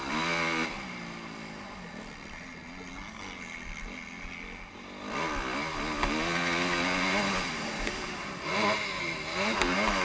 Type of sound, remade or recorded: recorded